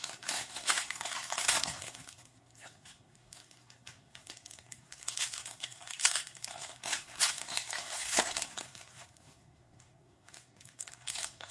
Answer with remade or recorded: remade